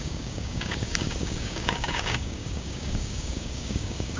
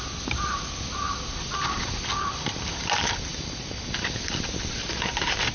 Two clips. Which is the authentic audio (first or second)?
second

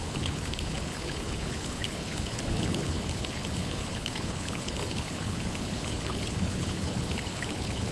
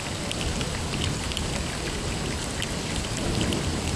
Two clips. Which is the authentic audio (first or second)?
second